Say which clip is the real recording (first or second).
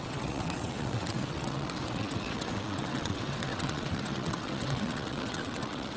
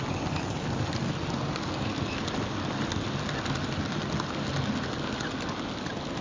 second